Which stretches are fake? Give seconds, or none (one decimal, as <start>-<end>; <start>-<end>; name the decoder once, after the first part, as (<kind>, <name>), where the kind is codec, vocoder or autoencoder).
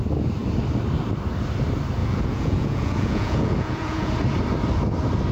2.0-4.1 (vocoder, Vocos)